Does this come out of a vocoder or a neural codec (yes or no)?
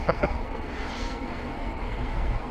yes